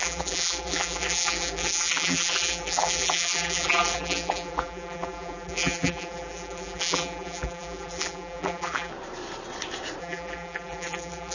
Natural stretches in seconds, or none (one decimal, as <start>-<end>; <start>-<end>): 8.9-10.0